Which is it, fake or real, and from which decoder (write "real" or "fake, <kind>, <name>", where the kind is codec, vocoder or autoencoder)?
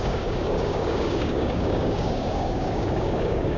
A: fake, codec, DAC